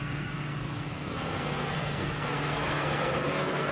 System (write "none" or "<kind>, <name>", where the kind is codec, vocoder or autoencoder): codec, SNAC